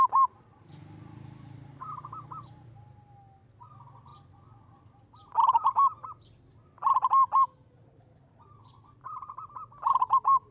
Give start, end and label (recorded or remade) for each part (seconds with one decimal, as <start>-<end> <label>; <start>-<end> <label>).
0.0-10.5 recorded